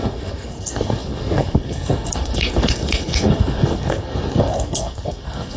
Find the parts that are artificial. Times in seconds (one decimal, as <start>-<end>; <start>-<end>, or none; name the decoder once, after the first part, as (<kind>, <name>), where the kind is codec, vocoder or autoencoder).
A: 0.0-5.6 (codec, SNAC)